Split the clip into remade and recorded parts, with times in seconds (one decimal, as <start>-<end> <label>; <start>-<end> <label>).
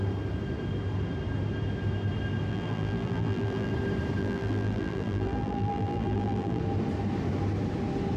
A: 0.0-2.5 recorded; 2.5-3.7 remade; 3.7-4.2 recorded; 4.2-6.6 remade; 6.6-8.2 recorded